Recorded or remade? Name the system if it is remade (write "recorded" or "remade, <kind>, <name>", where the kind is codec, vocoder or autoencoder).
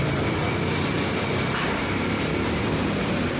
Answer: remade, vocoder, BigVGAN v2